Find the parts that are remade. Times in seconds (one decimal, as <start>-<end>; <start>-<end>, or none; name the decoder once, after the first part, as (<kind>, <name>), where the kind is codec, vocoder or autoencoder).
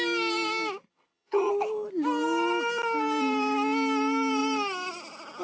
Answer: 0.9-1.5 (vocoder, HiFi-GAN)